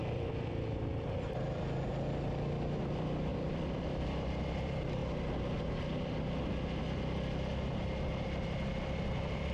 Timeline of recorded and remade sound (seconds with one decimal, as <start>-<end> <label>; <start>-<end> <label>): 0.0-1.9 remade; 1.9-2.8 recorded; 2.8-5.0 remade; 5.0-8.8 recorded; 8.8-9.5 remade